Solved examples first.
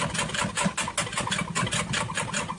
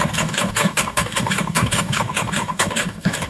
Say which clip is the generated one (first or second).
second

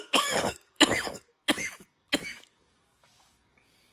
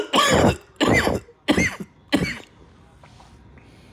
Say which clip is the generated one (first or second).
first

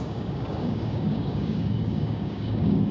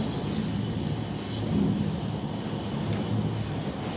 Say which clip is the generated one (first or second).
first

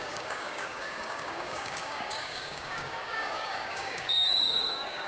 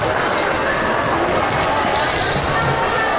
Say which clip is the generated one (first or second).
first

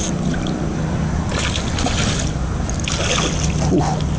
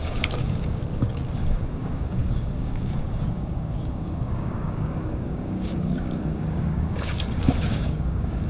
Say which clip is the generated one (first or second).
second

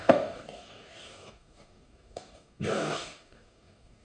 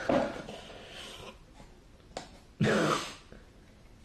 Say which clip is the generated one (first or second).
first